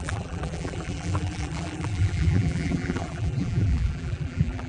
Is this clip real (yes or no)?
no